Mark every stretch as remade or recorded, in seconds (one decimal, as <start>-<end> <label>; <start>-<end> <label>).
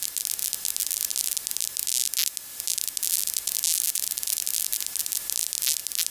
0.0-6.1 recorded